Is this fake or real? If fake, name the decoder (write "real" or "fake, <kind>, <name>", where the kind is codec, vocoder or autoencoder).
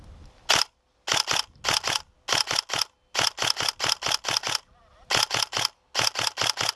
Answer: real